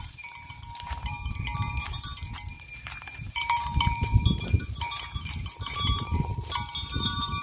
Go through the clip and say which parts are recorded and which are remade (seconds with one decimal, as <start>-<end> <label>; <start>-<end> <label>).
0.0-7.4 remade